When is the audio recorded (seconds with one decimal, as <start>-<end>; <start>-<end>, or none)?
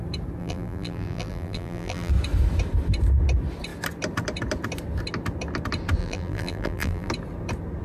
0.0-0.4; 2.1-6.0; 7.1-7.8